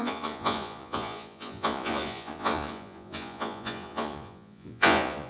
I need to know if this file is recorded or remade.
remade